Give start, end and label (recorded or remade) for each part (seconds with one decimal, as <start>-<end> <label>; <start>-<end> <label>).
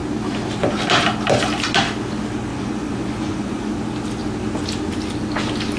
0.0-2.5 recorded; 2.5-3.7 remade; 3.7-5.8 recorded